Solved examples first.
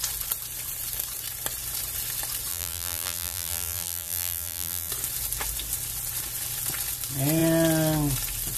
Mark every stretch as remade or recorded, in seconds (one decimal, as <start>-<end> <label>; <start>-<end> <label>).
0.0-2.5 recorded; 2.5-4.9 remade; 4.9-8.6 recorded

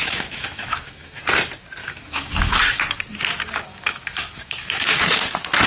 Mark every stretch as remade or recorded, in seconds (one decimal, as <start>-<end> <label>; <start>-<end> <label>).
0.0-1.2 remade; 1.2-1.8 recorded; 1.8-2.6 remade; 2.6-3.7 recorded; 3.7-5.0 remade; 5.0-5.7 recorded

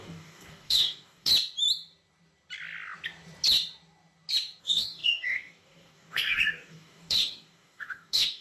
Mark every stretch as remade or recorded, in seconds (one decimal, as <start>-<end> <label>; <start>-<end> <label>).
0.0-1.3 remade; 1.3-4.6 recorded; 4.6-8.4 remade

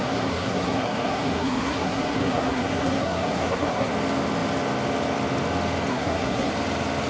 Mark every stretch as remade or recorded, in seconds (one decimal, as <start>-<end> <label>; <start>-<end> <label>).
0.0-3.9 remade; 3.9-5.9 recorded; 5.9-6.5 remade; 6.5-7.1 recorded